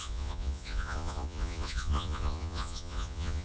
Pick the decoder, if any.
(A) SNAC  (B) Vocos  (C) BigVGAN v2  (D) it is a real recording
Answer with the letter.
B